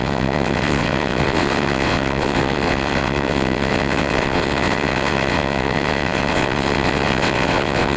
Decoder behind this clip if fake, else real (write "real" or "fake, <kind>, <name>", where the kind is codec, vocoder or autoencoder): fake, vocoder, WaveNeXt